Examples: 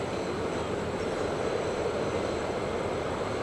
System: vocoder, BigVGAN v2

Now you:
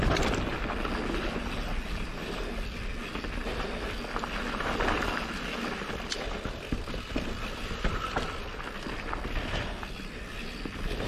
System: none